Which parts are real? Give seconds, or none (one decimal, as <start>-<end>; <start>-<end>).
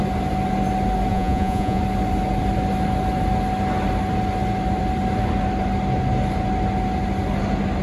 0.0-1.1; 1.8-7.8